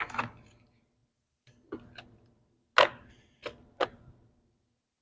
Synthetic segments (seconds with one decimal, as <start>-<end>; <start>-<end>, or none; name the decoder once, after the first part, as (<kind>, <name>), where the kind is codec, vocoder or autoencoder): none